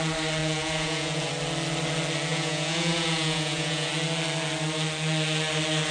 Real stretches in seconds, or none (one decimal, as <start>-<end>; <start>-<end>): 0.0-0.4; 1.3-2.3; 3.9-5.9